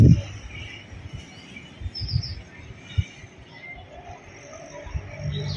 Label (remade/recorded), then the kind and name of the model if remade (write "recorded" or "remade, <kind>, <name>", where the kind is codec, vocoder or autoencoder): recorded